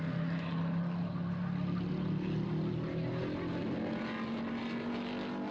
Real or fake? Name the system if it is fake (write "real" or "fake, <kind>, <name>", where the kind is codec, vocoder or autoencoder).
real